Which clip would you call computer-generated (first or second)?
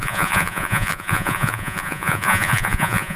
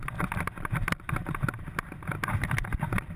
first